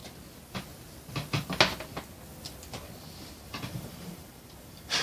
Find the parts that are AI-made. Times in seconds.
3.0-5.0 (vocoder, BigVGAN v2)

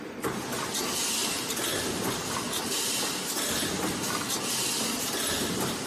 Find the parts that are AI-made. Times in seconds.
1.2-1.8 (vocoder, BigVGAN v2)

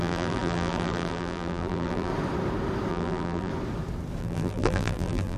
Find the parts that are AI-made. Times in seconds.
0.0-2.1 (vocoder, BigVGAN v2); 2.9-3.5; 4.2-5.4

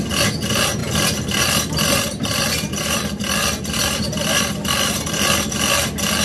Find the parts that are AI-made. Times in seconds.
none

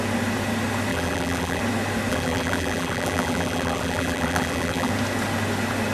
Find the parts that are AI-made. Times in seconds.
0.9-1.6 (vocoder, BigVGAN v2); 2.1-4.9

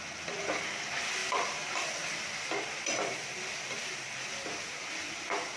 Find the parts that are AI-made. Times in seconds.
none